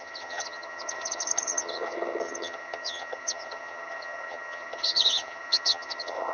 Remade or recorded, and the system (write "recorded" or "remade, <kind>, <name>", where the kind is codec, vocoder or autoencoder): remade, vocoder, HiFi-GAN